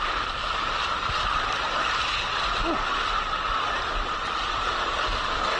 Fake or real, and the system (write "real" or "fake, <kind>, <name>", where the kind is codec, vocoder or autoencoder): real